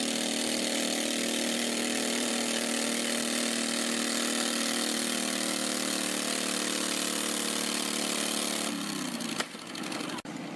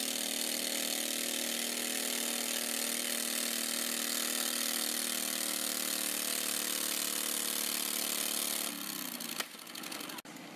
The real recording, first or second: second